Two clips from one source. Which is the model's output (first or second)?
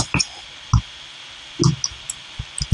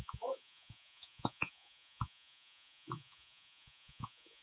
second